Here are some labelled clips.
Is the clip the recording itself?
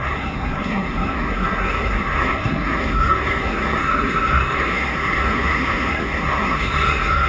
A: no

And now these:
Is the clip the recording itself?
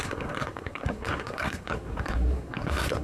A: no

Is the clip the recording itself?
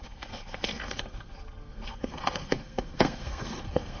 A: no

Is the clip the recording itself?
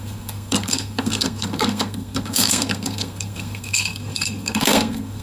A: no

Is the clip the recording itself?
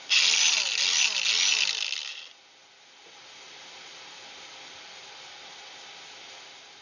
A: yes